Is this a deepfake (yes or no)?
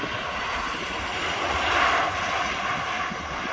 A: no